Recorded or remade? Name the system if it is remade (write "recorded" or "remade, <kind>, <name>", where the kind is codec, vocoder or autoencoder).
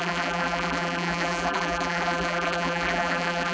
remade, vocoder, BigVGAN v2